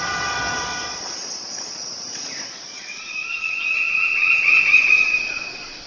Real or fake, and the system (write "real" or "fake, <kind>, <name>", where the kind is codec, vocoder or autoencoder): fake, vocoder, Vocos